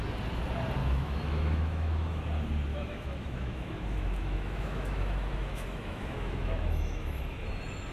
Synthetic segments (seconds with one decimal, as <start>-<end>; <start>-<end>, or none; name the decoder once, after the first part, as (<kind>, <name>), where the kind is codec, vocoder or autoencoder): 0.8-2.2 (autoencoder, DAC-VAE); 2.7-7.2